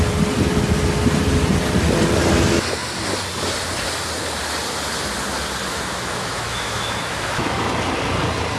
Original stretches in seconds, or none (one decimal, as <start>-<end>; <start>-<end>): 0.0-5.7; 7.7-8.6

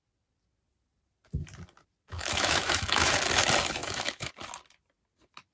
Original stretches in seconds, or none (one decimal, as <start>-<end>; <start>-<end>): 0.0-2.1; 3.1-3.8; 4.3-5.5

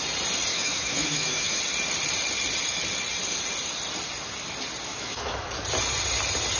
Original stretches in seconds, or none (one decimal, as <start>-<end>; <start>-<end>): 0.0-0.5; 1.6-4.9; 5.5-6.6

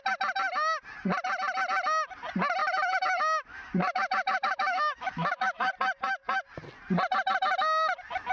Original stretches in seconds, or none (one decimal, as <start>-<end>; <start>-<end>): 0.0-2.6; 5.7-8.3

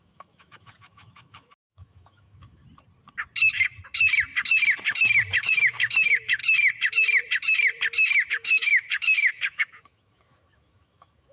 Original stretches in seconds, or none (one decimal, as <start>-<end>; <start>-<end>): 2.6-5.5; 6.4-8.3

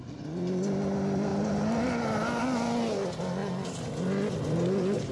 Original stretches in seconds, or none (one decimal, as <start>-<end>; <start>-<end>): 0.0-5.1

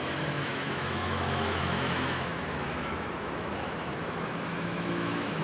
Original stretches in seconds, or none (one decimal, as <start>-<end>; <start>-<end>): none

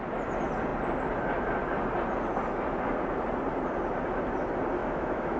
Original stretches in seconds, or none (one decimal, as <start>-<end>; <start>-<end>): 0.0-4.8